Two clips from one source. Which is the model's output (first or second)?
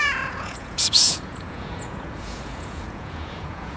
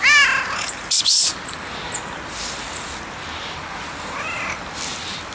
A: first